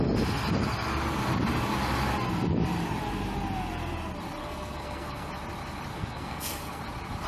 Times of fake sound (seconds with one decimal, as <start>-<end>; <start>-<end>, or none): 4.4-5.3; 5.9-6.8